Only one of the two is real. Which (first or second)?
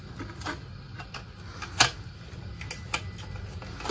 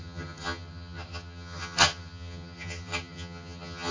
first